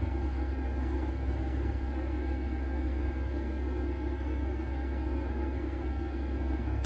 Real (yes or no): no